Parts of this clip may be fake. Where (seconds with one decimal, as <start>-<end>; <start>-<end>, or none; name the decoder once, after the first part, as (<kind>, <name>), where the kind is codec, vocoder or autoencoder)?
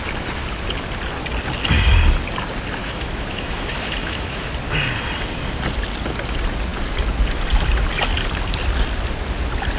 2.8-4.5 (autoencoder, DAC-VAE)